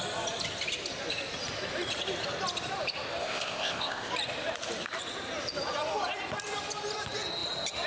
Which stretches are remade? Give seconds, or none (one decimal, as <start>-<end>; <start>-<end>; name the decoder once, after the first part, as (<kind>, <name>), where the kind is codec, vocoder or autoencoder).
3.2-4.1 (codec, ZipCodec)